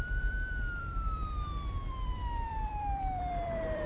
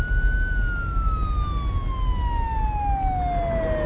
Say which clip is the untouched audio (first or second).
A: second